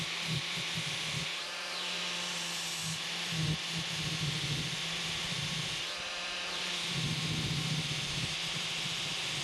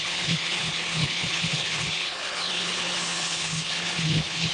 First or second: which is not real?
second